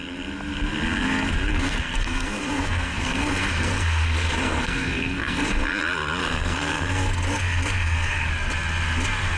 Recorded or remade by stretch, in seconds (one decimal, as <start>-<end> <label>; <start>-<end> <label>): 0.0-1.5 recorded; 1.5-5.5 remade; 5.5-6.2 recorded; 6.2-8.3 remade; 8.3-9.4 recorded